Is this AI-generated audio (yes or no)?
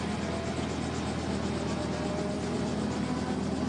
no